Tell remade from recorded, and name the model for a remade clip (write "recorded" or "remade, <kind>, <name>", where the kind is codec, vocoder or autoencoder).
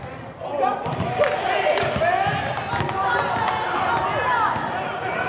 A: recorded